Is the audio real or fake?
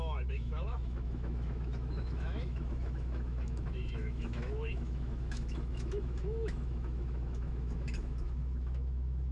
fake